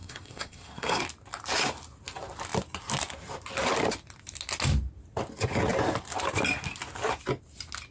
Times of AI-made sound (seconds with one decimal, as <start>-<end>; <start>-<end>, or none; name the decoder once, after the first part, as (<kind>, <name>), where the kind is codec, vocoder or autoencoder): 0.0-1.0 (codec, SNAC)